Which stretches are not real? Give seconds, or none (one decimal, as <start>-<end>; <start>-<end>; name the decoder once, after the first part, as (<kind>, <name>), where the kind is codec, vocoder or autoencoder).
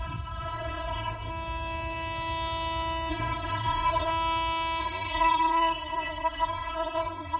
0.0-1.3 (codec, SNAC); 3.1-4.1; 4.8-7.4